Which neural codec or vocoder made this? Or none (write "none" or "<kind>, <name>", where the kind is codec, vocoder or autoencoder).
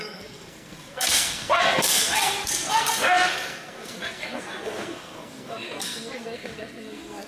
codec, SNAC